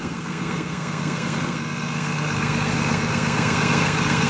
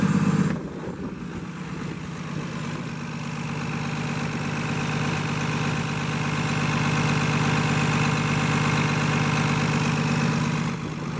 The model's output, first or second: first